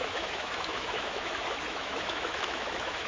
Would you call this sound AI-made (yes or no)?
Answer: yes